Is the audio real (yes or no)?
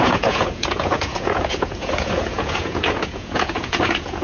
no